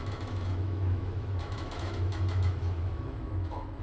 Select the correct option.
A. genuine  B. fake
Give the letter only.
B